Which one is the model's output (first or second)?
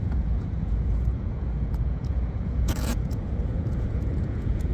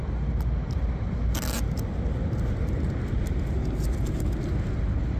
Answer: first